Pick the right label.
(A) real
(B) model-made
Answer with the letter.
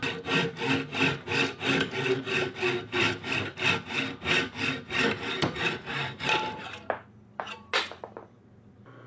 A